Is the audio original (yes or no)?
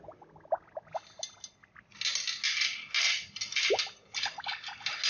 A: yes